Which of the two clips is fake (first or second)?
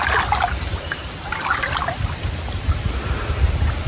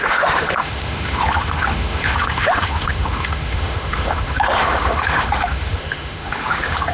second